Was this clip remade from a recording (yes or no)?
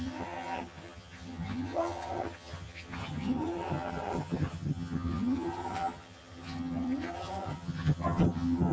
yes